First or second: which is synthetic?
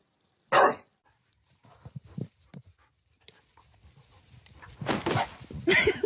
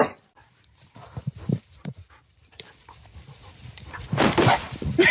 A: second